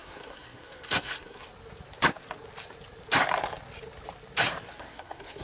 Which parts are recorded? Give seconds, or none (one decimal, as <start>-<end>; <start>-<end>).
1.5-4.7